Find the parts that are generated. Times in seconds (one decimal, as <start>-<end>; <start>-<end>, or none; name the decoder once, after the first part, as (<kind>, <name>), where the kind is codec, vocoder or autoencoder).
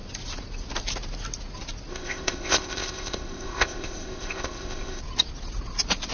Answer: 1.9-5.0 (codec, ZipCodec)